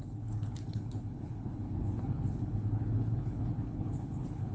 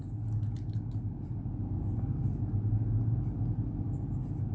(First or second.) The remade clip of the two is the first